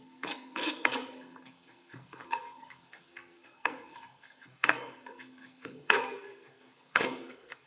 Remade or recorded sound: remade